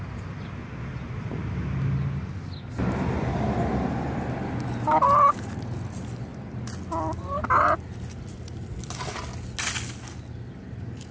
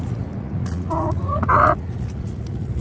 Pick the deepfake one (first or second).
second